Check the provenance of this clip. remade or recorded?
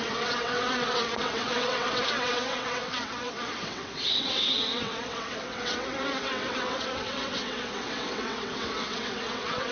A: remade